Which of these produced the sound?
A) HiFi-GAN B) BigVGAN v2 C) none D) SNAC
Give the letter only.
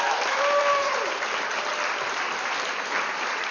B